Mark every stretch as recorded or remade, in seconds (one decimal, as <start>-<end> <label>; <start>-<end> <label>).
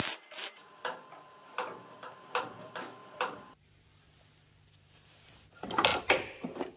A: 0.0-5.9 remade; 5.9-6.8 recorded